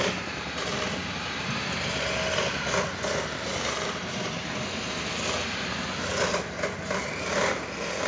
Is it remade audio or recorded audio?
recorded